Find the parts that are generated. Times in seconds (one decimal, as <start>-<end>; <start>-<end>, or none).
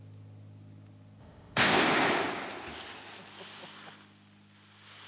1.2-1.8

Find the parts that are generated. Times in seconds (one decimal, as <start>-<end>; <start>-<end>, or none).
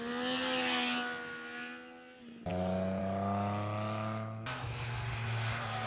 none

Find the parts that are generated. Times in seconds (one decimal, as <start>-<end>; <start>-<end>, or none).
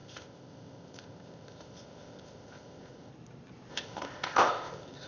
0.0-3.1; 3.7-5.1